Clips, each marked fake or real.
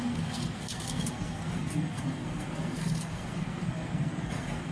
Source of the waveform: fake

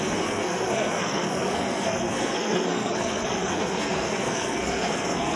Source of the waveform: fake